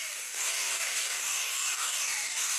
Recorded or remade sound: remade